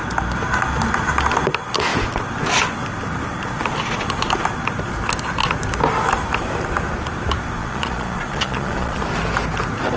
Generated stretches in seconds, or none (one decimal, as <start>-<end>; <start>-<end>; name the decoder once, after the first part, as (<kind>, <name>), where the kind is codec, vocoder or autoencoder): 7.6-9.0 (vocoder, Vocos)